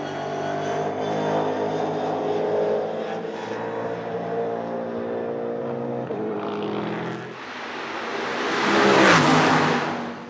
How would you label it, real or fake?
real